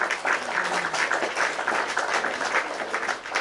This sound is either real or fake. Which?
real